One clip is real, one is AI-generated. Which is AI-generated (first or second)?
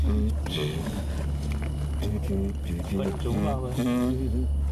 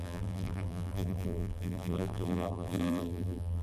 second